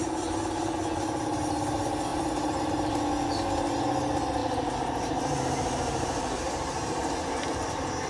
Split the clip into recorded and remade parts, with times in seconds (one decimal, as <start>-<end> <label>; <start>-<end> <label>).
0.0-2.1 recorded; 2.1-2.9 remade; 2.9-4.4 recorded; 4.4-8.1 remade